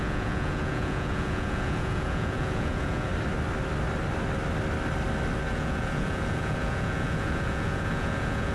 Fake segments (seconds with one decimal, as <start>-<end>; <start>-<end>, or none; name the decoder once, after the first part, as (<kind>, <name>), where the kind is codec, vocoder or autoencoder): 0.0-3.1 (vocoder, Vocos); 5.4-8.5